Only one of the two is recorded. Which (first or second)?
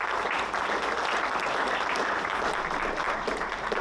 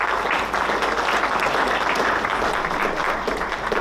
second